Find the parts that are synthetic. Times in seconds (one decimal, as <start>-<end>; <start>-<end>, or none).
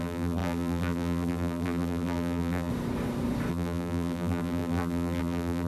0.0-2.7; 3.5-5.7